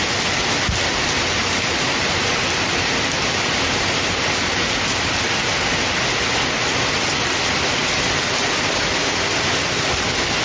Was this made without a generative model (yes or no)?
yes